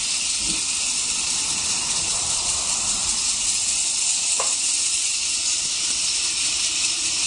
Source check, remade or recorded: recorded